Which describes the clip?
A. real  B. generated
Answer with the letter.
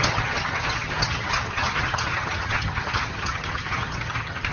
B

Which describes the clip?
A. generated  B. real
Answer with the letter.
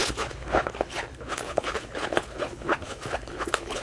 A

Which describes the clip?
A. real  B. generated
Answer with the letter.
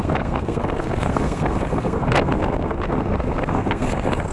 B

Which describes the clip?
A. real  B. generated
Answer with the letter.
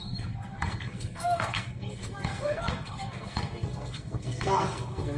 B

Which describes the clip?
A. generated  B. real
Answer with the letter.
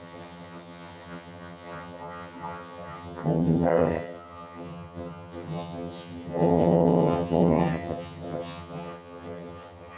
A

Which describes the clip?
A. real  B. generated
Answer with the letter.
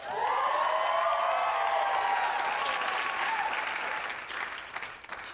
A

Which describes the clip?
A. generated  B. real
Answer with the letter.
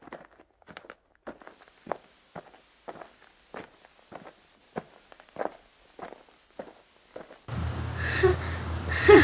B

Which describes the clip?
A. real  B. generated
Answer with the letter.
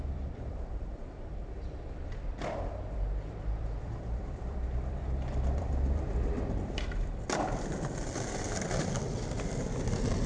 B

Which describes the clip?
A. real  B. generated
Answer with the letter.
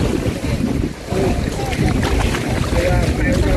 A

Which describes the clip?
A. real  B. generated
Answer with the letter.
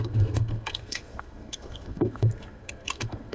B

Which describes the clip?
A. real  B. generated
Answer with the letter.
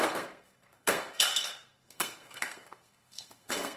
B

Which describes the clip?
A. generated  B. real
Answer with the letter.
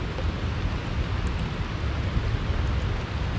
B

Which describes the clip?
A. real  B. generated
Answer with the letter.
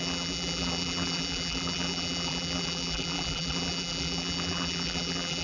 B